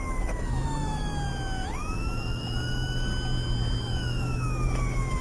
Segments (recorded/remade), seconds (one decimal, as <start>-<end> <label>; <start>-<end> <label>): 0.0-1.1 remade; 1.1-1.8 recorded; 1.8-3.1 remade; 3.1-3.8 recorded; 3.8-5.2 remade